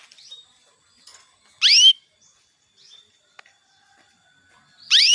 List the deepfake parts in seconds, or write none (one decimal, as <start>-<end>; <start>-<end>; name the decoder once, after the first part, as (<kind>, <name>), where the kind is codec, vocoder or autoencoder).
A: 0.0-1.1 (vocoder, BigVGAN v2); 3.0-5.1